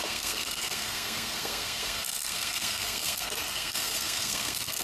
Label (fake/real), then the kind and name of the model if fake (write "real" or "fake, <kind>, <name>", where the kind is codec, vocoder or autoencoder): fake, codec, SNAC